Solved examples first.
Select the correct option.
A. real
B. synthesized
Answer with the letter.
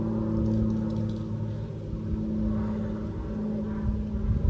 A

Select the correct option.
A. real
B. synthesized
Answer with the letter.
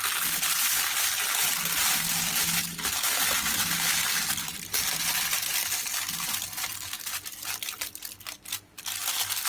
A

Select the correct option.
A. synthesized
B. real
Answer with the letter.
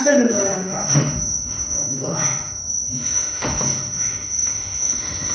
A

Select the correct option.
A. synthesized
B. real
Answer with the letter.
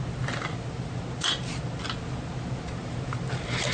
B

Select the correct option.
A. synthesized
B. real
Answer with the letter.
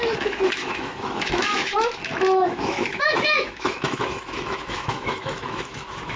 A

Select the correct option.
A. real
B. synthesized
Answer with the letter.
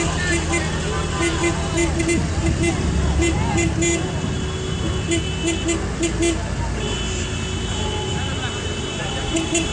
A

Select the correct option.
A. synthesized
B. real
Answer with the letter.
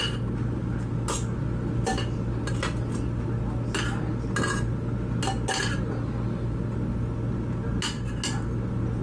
B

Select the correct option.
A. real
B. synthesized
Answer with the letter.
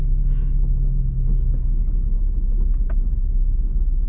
A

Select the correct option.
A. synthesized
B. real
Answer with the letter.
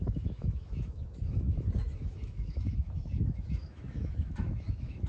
A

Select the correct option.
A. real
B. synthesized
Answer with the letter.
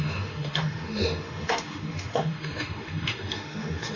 B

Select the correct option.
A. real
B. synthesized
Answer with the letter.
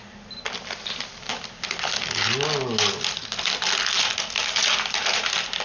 A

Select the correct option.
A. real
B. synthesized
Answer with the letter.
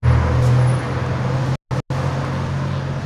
A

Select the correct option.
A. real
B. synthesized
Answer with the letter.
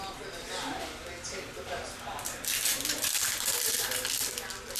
A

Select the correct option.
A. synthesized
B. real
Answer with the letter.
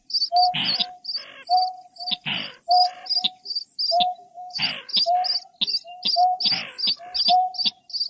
B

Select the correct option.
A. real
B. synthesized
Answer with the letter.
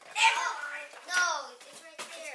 A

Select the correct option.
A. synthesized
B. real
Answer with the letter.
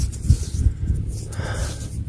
B